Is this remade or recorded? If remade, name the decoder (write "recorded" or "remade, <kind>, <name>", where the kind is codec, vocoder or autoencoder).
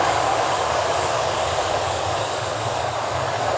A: remade, codec, DAC